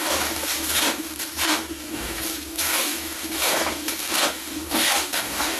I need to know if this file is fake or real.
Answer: fake